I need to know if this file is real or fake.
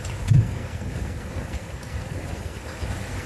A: fake